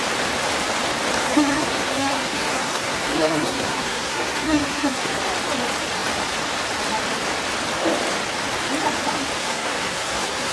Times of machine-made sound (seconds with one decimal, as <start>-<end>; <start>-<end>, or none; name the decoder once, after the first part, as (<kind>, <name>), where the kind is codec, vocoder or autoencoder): 1.2-5.2 (codec, SNAC); 9.4-10.5